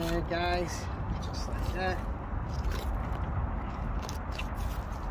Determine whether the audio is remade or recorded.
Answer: recorded